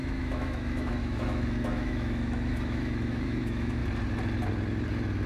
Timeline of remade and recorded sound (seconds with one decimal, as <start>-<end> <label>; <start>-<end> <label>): 0.0-3.8 remade; 3.8-5.3 recorded